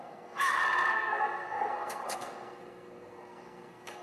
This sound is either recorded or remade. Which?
remade